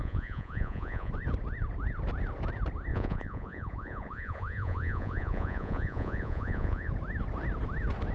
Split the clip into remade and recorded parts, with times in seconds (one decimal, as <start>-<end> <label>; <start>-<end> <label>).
0.0-1.1 remade; 1.1-2.9 recorded; 2.9-6.9 remade; 6.9-8.1 recorded